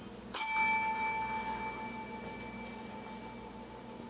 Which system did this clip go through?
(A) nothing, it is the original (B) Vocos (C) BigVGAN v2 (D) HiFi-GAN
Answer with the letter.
A